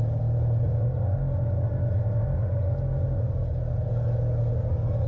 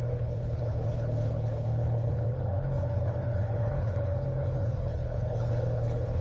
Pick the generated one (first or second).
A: second